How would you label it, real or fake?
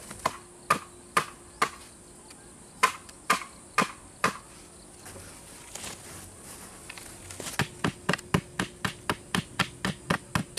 real